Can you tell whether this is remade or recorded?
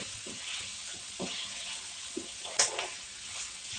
remade